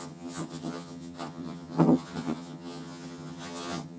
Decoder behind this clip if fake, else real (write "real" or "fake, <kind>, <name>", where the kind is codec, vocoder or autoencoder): fake, vocoder, HiFi-GAN